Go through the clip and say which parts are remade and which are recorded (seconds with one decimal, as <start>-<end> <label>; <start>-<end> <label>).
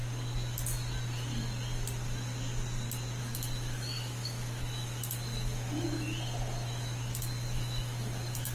0.0-3.2 recorded; 3.2-8.5 remade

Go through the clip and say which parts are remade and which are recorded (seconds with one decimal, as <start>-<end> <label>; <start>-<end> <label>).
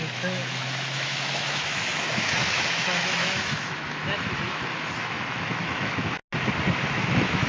0.0-6.2 remade; 6.2-7.0 recorded; 7.0-7.5 remade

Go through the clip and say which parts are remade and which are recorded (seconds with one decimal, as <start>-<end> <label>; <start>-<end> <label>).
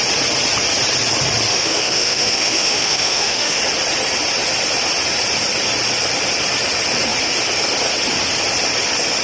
0.0-1.5 recorded; 1.5-3.6 remade; 3.6-9.2 recorded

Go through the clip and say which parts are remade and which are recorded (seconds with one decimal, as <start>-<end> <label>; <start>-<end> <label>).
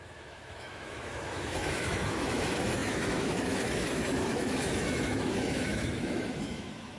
0.0-7.0 remade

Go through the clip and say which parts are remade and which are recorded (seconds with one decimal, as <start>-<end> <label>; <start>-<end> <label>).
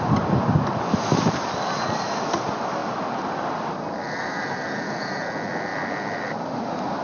0.0-7.0 recorded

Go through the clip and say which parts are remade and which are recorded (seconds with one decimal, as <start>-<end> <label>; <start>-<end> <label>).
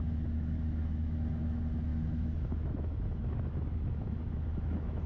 0.0-5.1 remade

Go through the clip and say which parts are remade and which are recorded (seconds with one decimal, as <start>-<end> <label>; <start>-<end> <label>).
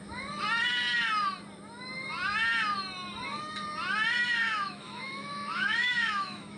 0.0-4.4 recorded; 4.4-6.6 remade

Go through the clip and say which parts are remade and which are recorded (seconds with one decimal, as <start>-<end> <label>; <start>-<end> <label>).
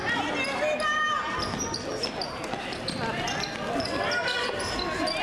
0.0-5.2 recorded